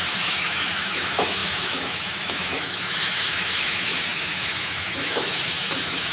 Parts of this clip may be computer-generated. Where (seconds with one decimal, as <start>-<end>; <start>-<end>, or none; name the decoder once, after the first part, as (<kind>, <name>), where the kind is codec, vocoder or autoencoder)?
0.0-6.1 (autoencoder, DAC-VAE)